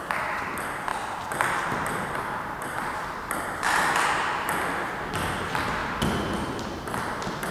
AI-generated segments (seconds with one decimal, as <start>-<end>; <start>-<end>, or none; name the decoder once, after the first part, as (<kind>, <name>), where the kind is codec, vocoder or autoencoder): 0.9-4.1 (vocoder, BigVGAN v2)

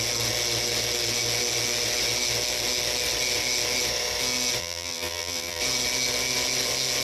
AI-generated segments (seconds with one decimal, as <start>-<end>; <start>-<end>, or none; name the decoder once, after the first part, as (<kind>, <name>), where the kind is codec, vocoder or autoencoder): 4.6-5.6 (vocoder, BigVGAN v2)

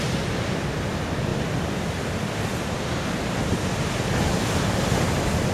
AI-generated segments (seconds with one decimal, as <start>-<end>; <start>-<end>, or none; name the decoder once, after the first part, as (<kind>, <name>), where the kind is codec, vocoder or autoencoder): none